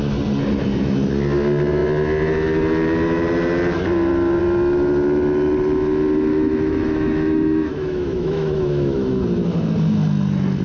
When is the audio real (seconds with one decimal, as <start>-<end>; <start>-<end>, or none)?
0.0-6.3; 9.2-10.6